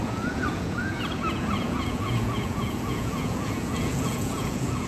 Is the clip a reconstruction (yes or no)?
yes